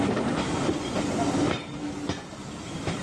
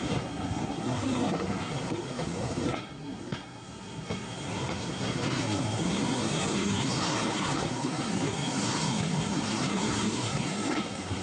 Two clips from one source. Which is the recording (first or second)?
first